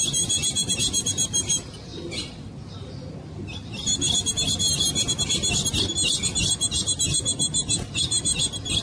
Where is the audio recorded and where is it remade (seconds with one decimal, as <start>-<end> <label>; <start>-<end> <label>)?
0.0-8.8 recorded